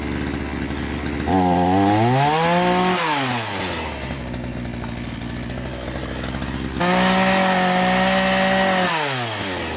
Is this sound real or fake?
real